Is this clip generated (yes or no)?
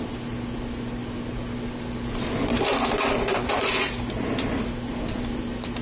no